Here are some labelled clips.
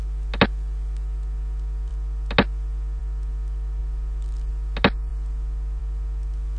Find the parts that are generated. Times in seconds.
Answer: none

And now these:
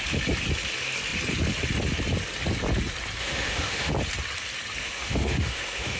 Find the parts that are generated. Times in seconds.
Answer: 3.2-3.9 (autoencoder, DAC-VAE); 4.8-6.0

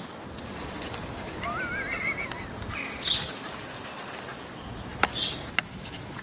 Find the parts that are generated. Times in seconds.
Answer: none

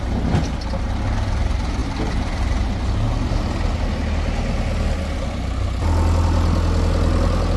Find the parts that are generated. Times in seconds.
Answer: none

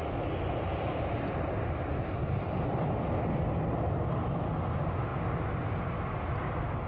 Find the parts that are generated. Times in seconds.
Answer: 0.7-3.6 (vocoder, BigVGAN v2)

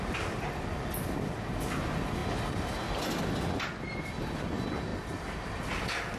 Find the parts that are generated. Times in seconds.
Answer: none

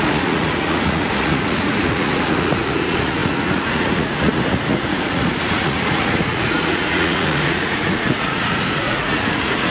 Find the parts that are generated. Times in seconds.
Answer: 0.0-9.7 (vocoder, Vocos)